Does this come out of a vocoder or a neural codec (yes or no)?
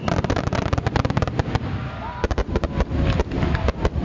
no